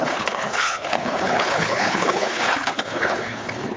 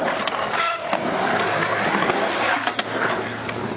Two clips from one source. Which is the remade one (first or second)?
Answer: first